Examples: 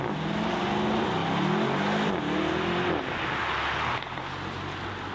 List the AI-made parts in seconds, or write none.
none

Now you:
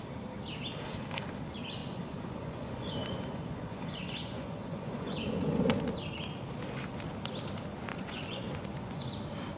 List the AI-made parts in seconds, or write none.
1.8-5.6; 7.9-9.1

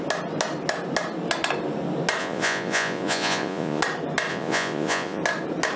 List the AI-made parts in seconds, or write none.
2.2-3.8; 4.3-5.2

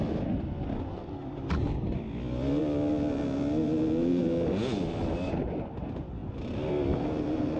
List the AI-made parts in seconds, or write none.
none

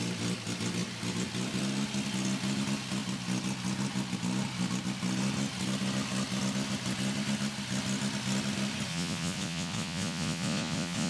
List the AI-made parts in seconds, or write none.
8.9-11.1